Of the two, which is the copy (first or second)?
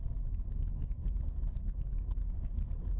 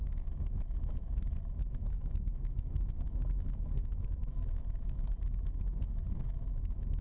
second